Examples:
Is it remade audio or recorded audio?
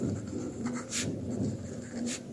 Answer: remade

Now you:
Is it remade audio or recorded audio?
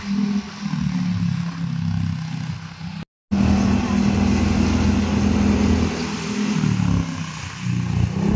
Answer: recorded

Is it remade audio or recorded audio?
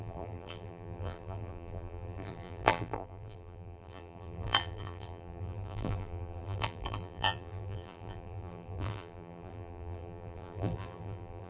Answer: remade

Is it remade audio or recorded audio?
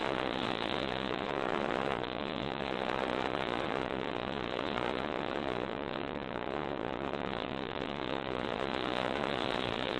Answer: remade